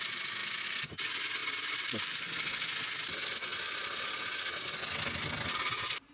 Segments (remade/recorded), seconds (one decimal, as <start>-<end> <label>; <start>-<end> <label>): 0.0-1.4 recorded; 1.4-2.3 remade; 2.3-3.5 recorded; 3.5-4.0 remade; 4.0-6.1 recorded